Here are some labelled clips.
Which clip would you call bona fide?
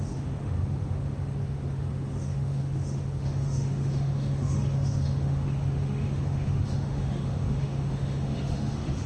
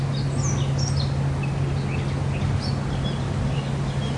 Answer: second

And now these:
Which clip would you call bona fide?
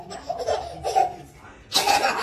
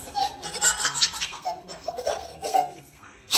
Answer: first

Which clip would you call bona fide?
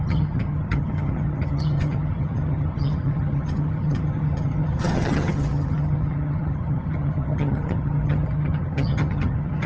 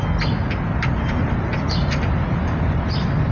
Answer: second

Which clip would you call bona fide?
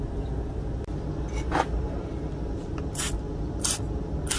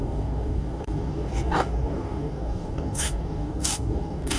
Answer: first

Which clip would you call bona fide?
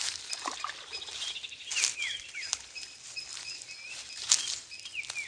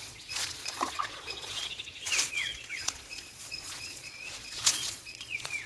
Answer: first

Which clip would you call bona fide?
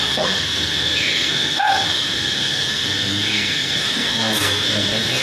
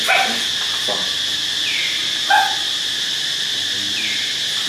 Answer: second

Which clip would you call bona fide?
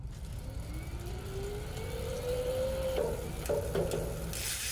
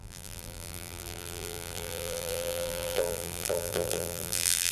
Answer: first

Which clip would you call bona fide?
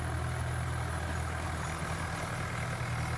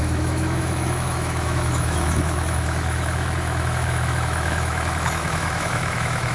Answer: first